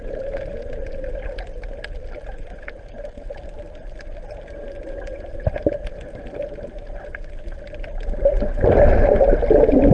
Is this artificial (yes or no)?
no